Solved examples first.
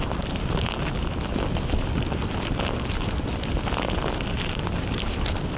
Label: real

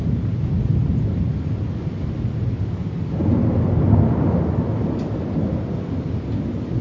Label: real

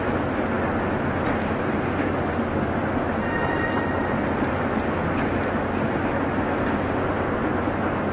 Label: real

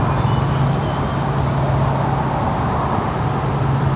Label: real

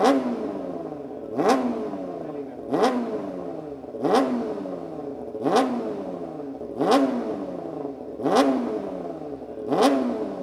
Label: real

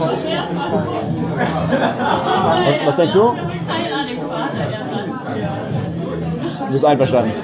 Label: real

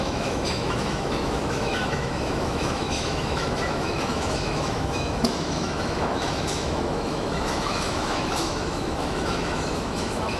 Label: fake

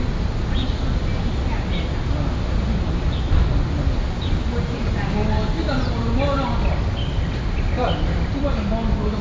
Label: real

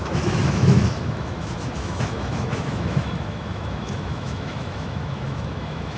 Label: fake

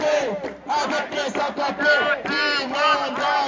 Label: real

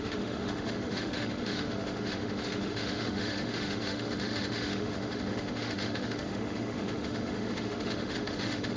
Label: fake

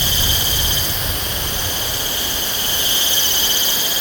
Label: real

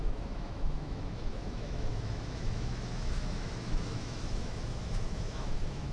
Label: fake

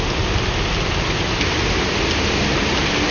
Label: real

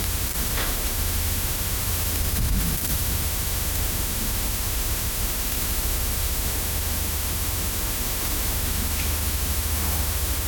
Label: fake